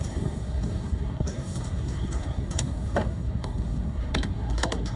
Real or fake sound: fake